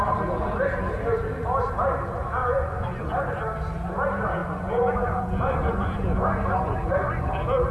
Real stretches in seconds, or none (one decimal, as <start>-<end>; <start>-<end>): 0.0-2.4; 3.1-4.4; 7.3-7.7